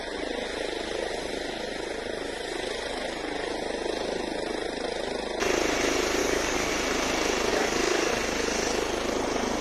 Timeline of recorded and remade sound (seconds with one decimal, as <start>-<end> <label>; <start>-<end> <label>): 0.0-6.2 recorded; 6.2-6.7 remade; 6.7-7.5 recorded; 7.5-8.1 remade; 8.1-9.6 recorded